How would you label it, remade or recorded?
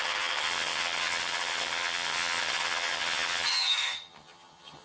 remade